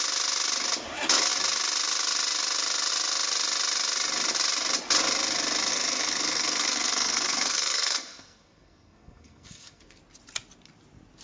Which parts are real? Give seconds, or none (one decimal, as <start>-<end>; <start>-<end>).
0.0-5.7; 10.0-11.2